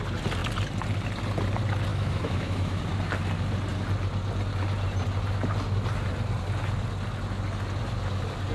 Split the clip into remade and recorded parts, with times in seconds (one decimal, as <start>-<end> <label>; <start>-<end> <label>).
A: 0.0-1.9 recorded; 1.9-2.8 remade; 2.8-8.5 recorded